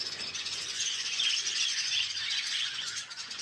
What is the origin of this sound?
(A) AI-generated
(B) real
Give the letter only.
A